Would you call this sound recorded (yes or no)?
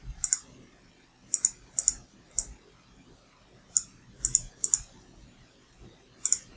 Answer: yes